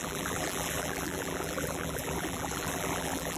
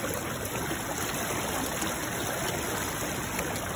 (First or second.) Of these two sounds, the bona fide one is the second